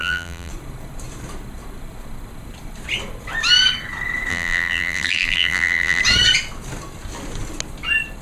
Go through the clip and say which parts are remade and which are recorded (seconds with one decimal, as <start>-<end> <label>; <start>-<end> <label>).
0.0-0.5 remade; 0.5-4.3 recorded; 4.3-6.0 remade; 6.0-8.2 recorded

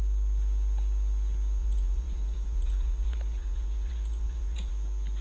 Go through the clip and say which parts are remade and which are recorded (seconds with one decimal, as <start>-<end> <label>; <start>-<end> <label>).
0.0-1.6 recorded; 1.6-4.7 remade; 4.7-5.2 recorded

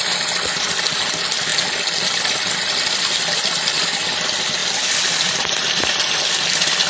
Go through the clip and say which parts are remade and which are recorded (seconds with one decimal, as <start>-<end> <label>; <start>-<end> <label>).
0.0-6.9 recorded